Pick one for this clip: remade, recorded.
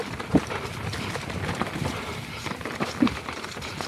remade